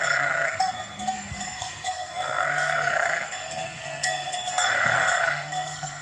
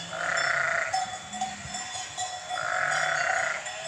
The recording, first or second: second